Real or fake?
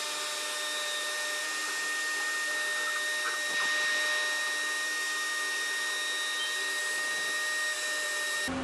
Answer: real